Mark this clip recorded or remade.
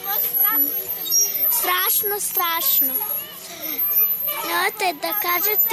recorded